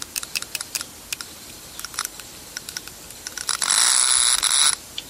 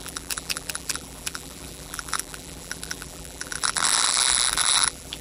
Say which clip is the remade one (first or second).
second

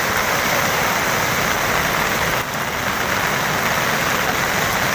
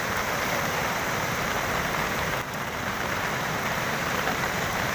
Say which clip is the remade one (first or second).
second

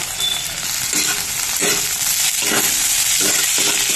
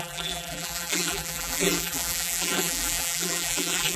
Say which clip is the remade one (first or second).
second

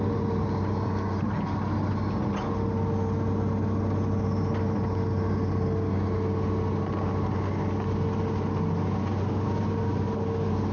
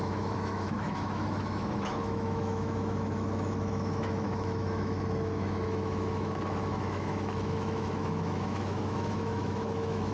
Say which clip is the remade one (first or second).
second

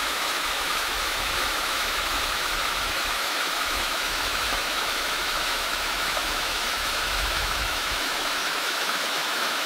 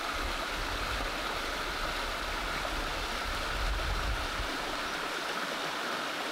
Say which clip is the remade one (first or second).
first